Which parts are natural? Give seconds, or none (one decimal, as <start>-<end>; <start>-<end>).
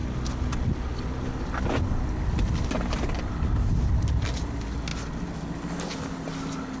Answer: 0.0-6.8